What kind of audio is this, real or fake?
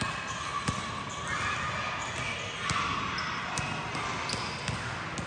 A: real